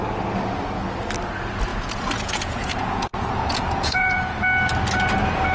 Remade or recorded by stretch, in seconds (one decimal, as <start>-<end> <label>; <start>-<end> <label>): 0.0-1.7 recorded; 1.7-4.2 remade; 4.2-5.5 recorded